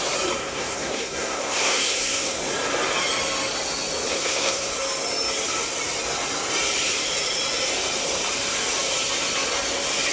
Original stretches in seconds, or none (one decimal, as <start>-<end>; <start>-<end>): 0.0-0.4; 2.4-4.1; 4.7-10.1